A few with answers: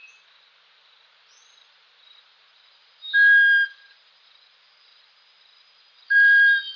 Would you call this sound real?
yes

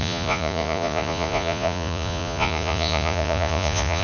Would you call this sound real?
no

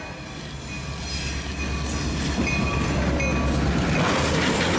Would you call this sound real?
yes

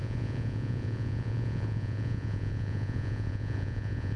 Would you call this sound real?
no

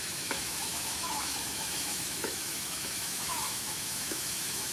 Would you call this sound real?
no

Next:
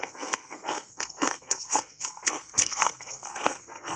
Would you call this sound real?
no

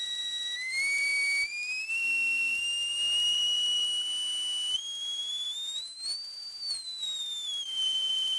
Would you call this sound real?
no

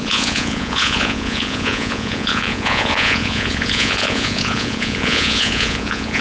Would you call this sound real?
no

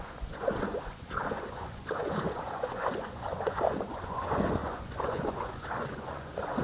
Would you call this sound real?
no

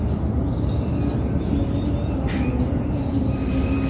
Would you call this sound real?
yes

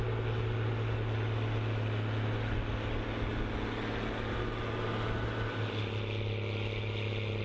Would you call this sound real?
yes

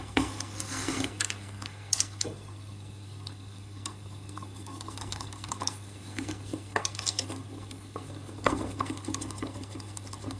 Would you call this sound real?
no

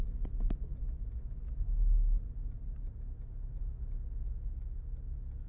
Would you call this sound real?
yes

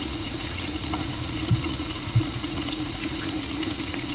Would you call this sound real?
no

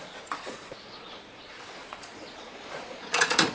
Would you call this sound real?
no